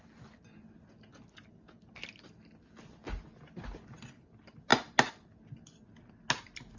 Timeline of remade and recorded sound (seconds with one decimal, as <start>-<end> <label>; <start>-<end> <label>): 0.0-6.8 recorded